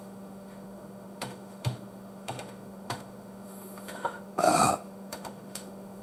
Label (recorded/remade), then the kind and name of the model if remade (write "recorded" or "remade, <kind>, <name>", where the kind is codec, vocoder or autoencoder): remade, autoencoder, DAC-VAE